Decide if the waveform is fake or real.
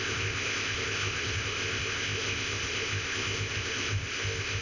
fake